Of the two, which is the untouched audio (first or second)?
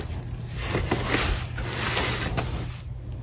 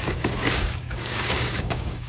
first